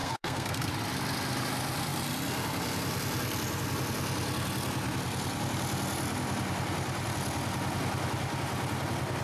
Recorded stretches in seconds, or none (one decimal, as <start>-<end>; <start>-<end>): 0.7-9.2